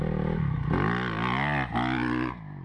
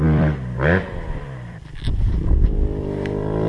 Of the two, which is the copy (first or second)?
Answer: second